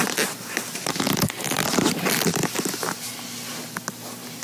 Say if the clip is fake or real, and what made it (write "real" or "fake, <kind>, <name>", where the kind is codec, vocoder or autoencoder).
real